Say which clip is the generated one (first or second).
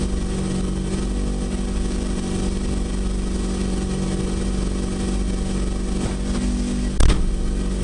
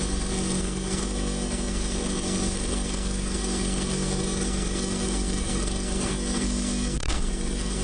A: second